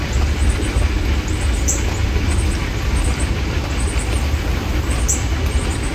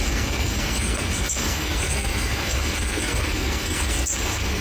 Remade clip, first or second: second